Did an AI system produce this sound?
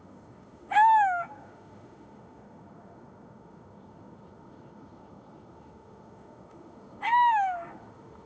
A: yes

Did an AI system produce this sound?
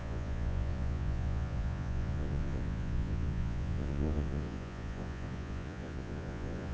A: yes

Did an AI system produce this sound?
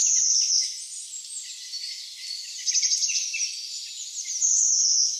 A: no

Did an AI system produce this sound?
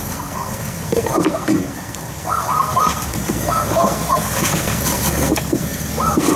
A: yes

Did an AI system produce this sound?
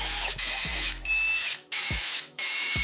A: yes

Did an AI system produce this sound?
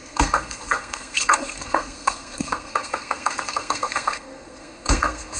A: yes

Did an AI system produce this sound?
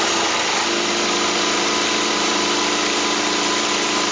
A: no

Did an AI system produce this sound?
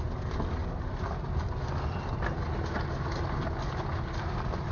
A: no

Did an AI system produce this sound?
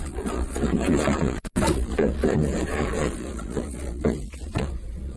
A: yes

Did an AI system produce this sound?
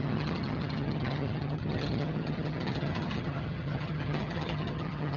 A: yes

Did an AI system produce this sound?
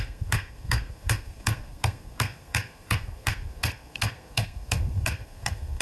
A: yes